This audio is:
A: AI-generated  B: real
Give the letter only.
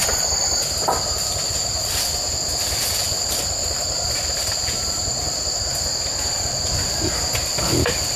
B